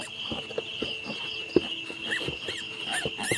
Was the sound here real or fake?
real